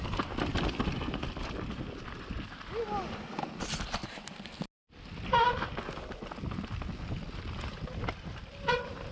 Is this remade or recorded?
recorded